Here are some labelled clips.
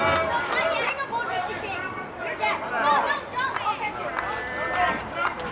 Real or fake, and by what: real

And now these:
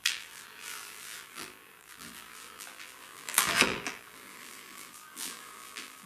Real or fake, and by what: fake, vocoder, BigVGAN v2